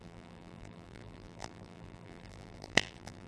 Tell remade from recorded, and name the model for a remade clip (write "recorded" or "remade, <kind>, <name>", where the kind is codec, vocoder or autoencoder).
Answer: remade, vocoder, BigVGAN v2